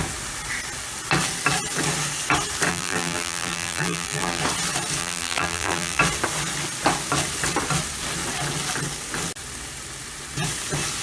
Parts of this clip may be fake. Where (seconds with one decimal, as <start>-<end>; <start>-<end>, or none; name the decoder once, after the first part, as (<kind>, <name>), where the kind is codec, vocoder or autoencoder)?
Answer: 2.7-4.4 (vocoder, BigVGAN v2); 5.0-6.0

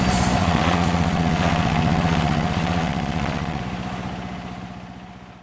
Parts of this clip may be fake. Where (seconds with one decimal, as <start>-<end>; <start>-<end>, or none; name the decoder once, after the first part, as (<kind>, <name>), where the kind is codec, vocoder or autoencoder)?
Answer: 0.4-3.6 (vocoder, Vocos)

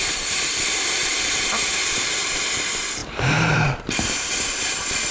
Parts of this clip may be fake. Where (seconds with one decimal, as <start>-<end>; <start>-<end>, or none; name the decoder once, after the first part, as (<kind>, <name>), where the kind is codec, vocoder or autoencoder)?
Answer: 1.6-2.4 (vocoder, BigVGAN v2); 3.0-4.3

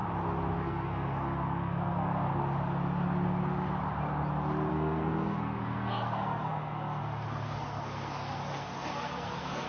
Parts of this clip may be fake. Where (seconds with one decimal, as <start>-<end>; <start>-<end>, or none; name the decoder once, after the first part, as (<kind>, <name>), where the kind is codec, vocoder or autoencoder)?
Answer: 0.6-2.3 (codec, SNAC); 4.7-9.7

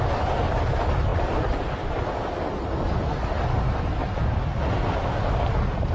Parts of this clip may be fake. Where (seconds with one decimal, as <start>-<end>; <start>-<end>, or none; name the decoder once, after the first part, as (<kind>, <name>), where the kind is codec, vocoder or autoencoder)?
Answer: 0.0-5.9 (vocoder, BigVGAN v2)

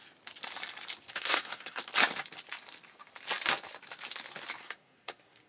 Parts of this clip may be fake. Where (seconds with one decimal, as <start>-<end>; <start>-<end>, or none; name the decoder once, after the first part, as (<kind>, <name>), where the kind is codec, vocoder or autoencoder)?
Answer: 1.1-1.8 (codec, SNAC); 4.6-5.5

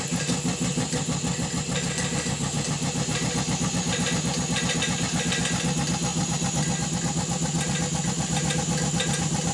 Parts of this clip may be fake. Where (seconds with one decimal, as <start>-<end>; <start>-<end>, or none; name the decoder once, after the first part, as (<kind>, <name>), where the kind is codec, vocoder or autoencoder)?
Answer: none

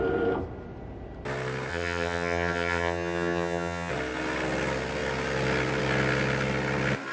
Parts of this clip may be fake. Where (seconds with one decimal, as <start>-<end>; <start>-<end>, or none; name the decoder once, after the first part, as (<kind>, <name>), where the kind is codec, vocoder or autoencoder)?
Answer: 1.7-3.9 (vocoder, HiFi-GAN)